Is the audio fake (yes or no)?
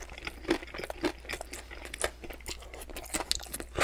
no